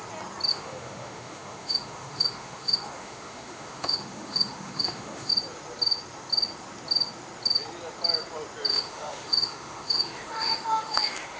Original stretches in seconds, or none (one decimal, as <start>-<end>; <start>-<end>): 0.0-0.5; 5.3-8.7